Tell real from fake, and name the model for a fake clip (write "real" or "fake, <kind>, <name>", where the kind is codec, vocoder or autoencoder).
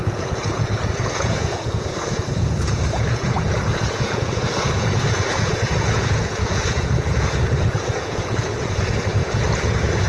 fake, vocoder, Vocos